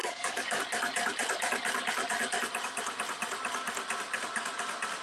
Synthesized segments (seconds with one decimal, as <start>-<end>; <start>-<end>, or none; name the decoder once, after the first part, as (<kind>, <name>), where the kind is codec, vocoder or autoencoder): 0.0-0.6 (codec, DAC)